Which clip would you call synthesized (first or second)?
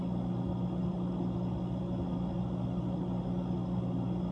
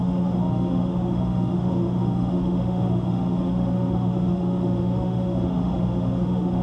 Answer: second